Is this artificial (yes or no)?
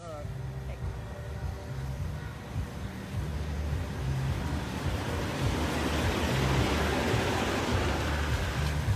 no